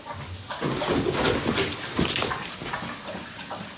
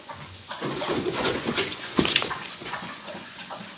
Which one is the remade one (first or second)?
second